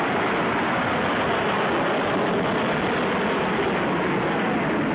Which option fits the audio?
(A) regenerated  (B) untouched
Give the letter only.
B